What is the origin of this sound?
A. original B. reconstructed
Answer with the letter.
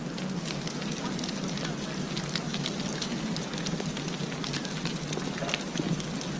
A